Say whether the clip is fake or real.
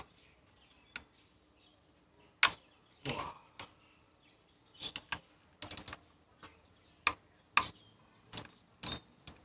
real